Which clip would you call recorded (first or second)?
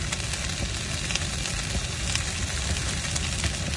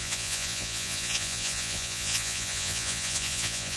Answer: first